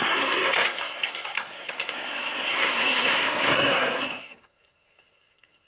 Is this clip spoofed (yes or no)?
yes